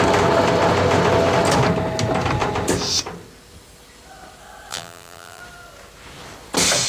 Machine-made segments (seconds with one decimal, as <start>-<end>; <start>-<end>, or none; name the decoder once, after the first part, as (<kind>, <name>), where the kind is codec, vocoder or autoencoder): 4.7-5.4 (vocoder, BigVGAN v2)